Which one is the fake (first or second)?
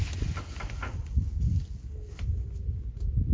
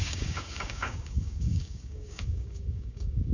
second